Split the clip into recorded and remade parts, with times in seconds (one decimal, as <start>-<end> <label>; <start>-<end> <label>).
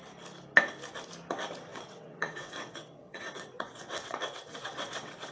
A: 0.0-1.7 recorded; 1.7-5.3 remade